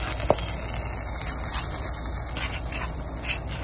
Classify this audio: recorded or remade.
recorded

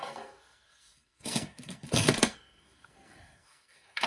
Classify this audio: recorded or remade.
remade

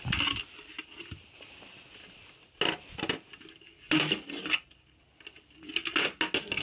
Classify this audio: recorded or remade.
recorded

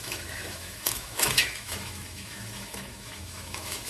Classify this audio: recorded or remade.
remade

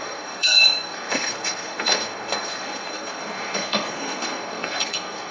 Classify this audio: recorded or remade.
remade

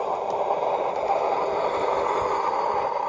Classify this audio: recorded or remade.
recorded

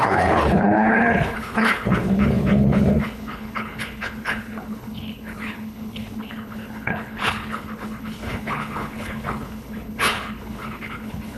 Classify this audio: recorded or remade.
remade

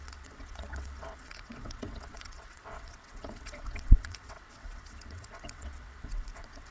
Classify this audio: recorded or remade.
remade